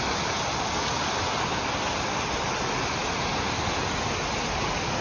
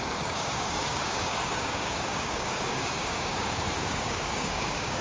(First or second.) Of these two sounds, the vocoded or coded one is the second